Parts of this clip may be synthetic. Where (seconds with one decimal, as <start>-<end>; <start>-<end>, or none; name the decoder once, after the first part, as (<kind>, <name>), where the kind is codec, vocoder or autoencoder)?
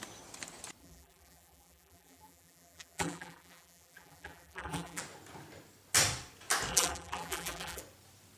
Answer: 0.8-5.0 (vocoder, BigVGAN v2); 6.7-7.8